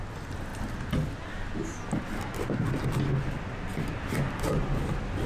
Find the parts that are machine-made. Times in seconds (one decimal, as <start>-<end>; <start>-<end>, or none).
none